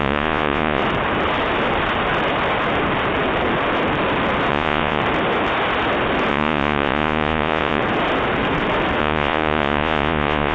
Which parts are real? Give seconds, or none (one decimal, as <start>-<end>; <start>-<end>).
0.8-4.5; 5.0-6.3; 7.8-9.0